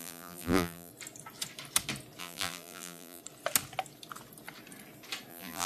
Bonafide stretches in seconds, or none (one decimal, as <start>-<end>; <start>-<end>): 0.9-2.2; 3.2-5.3